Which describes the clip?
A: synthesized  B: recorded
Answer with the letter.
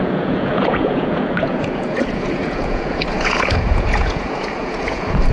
A